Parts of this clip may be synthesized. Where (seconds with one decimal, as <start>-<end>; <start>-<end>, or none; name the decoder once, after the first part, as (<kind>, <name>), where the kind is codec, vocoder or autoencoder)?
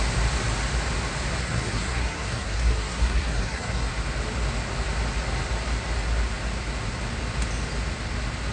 1.4-3.9 (codec, SNAC)